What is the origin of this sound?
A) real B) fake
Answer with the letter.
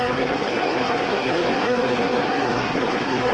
B